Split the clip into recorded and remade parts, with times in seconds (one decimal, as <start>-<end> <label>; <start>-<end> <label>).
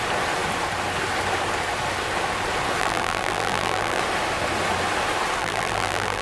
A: 0.0-2.8 recorded; 2.8-4.0 remade; 4.0-5.4 recorded; 5.4-6.2 remade